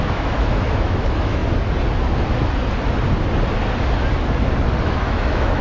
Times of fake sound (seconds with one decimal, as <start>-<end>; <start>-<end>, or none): 0.0-1.4; 4.8-5.6